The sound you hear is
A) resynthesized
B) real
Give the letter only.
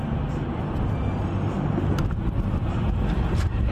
B